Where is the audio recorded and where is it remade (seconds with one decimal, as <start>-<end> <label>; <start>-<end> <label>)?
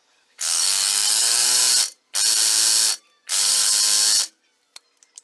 0.0-1.6 remade; 1.6-3.3 recorded; 3.3-3.7 remade; 3.7-5.2 recorded